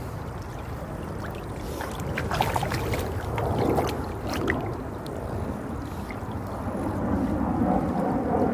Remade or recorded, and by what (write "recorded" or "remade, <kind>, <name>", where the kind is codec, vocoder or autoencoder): recorded